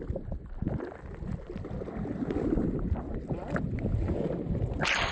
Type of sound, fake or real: real